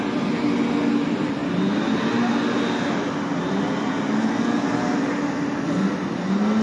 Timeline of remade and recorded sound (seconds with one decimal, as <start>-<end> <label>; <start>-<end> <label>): 0.0-6.6 recorded